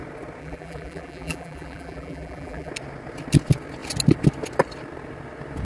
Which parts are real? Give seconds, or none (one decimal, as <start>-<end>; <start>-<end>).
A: 0.0-0.4; 2.7-5.6